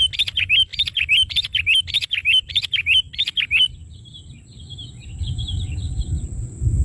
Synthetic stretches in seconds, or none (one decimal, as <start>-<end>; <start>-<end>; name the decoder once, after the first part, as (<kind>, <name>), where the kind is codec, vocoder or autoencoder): none